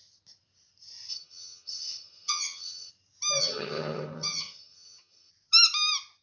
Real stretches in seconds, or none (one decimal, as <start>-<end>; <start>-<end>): 0.0-1.1; 2.9-3.4; 5.3-6.2

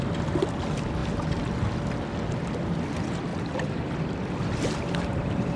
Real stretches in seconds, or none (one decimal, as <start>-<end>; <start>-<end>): 0.0-3.3; 3.9-5.1